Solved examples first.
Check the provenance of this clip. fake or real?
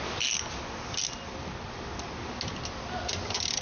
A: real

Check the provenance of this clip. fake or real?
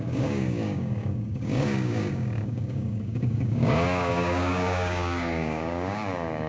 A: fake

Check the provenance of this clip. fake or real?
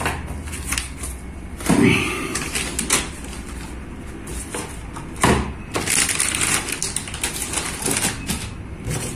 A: real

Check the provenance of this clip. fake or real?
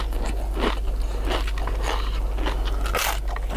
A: real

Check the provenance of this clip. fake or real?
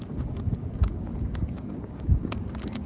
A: fake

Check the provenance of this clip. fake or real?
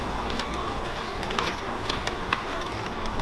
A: fake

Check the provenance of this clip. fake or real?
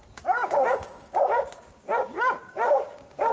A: fake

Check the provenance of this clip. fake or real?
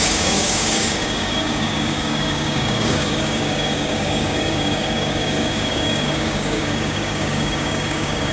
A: fake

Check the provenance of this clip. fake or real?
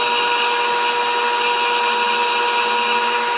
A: real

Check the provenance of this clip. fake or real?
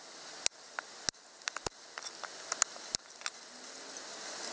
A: real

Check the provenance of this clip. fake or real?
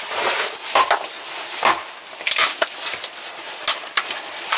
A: real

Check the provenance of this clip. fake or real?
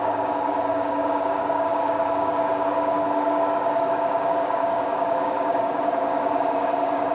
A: fake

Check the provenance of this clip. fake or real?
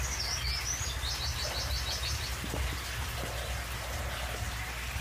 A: real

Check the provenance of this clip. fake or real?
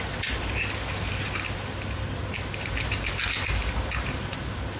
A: real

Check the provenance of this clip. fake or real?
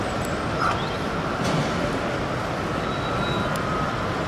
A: real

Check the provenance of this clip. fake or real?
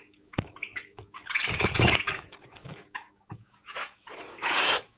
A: fake